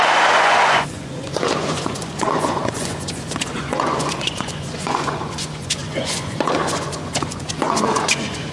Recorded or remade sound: remade